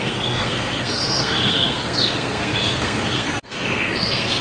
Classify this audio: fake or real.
fake